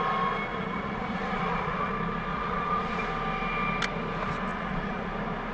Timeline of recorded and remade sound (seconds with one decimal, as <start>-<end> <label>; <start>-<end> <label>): 0.0-0.5 recorded; 0.5-1.9 remade; 1.9-2.3 recorded; 2.3-3.0 remade; 3.0-4.5 recorded; 4.5-5.1 remade; 5.1-5.5 recorded

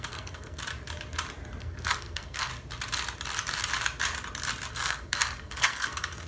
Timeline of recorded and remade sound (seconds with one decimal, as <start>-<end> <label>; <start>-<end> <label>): 0.0-0.6 remade; 0.6-1.6 recorded; 1.6-2.5 remade; 2.5-4.7 recorded; 4.7-6.3 remade

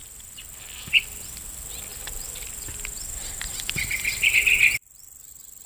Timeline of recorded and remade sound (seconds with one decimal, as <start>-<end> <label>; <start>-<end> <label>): 0.0-5.7 recorded

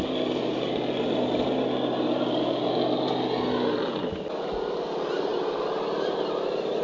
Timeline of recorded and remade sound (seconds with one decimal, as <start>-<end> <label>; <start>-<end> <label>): 0.0-6.8 recorded

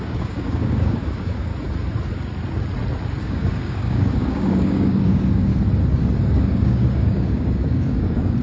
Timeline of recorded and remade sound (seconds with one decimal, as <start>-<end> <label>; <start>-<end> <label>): 0.0-1.5 remade; 1.5-3.2 recorded; 3.2-5.5 remade; 5.5-6.3 recorded; 6.3-8.4 remade

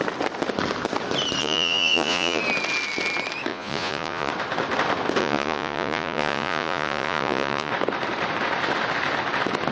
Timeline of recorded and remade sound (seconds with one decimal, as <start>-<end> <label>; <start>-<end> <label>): 0.0-1.4 recorded; 1.4-2.4 remade; 2.4-3.5 recorded; 3.5-4.3 remade; 4.3-5.2 recorded; 5.2-7.7 remade; 7.7-9.7 recorded